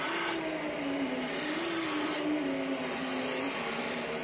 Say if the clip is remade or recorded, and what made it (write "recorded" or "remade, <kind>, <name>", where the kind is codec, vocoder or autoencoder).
recorded